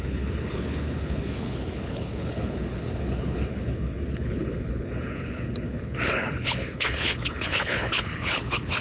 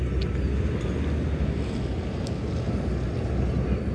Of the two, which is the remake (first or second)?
first